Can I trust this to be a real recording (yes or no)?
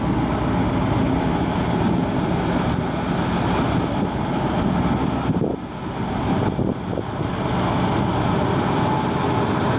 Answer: yes